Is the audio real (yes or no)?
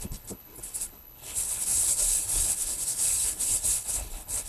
no